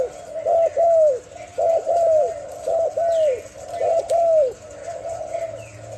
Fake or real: real